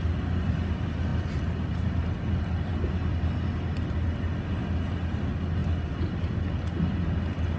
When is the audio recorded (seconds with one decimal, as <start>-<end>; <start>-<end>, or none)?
0.0-7.6